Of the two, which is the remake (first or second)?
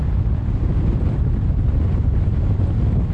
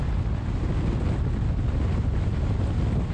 first